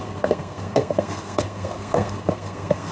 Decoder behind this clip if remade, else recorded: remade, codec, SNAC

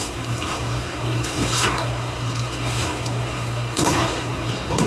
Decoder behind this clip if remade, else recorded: remade, codec, SNAC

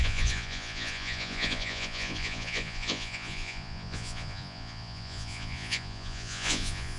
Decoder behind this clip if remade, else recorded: remade, vocoder, Vocos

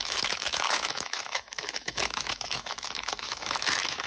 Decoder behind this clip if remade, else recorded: remade, autoencoder, DAC-VAE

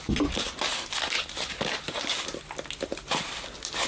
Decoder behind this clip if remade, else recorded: recorded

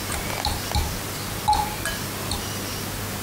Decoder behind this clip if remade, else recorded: recorded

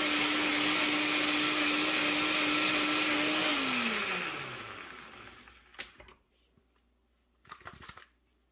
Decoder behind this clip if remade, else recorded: recorded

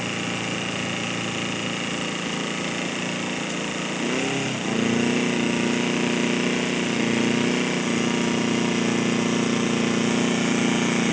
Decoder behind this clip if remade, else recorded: recorded